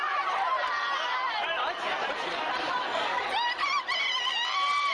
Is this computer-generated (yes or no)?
no